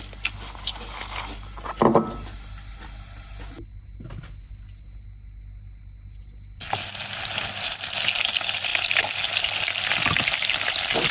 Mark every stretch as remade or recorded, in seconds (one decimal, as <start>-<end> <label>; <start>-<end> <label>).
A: 0.0-11.1 recorded